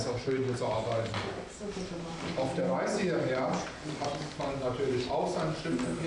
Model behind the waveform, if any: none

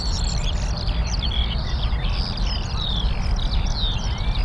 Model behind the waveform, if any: none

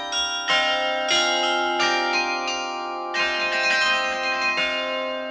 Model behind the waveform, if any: none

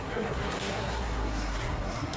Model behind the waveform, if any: codec, SNAC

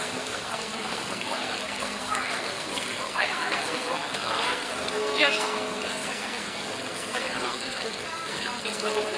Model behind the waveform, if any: codec, SNAC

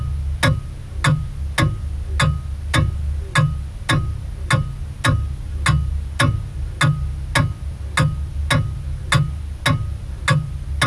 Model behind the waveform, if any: none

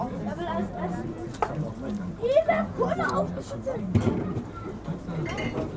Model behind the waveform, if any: none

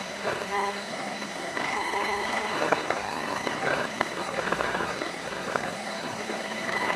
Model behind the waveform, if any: codec, SNAC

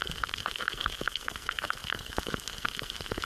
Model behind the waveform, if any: codec, SNAC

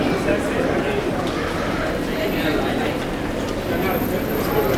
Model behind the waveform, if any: none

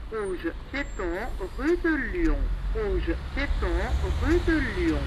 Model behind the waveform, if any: none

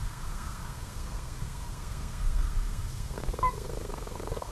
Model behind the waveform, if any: codec, SNAC